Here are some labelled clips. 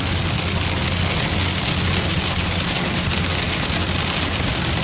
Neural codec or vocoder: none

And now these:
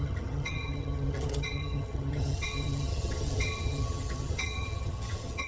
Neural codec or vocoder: vocoder, HiFi-GAN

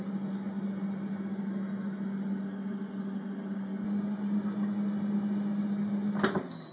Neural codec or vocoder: none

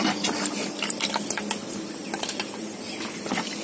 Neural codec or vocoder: none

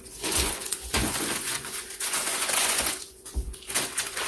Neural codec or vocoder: vocoder, Vocos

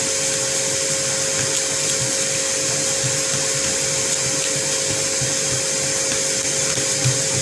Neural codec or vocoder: none